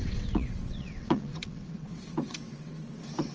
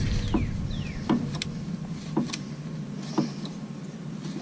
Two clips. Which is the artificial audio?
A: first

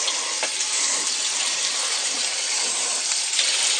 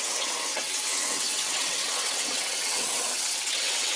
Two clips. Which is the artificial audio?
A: second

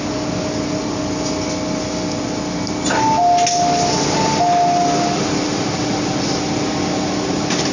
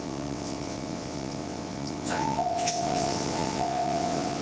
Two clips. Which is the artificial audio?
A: second